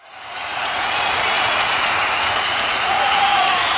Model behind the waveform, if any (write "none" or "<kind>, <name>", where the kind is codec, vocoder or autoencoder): vocoder, Vocos